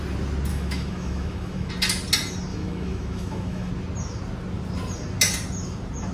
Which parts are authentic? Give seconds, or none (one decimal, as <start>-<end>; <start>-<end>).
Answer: 0.0-0.5; 1.7-2.5; 3.7-6.1